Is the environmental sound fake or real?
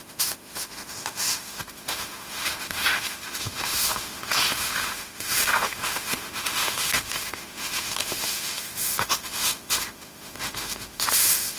fake